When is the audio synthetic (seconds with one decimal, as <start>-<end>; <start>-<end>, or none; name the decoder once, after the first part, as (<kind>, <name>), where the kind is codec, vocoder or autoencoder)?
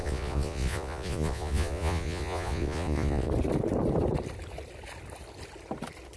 0.0-3.3 (vocoder, Vocos)